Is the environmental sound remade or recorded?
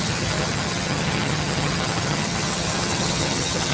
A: remade